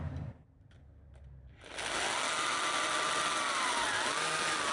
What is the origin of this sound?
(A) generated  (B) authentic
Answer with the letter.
B